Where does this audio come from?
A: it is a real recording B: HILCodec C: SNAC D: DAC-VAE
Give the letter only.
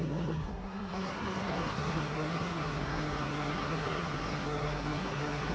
C